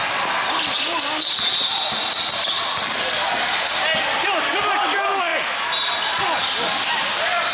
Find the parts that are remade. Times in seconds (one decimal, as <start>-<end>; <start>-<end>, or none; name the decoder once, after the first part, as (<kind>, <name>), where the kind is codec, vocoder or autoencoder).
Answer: none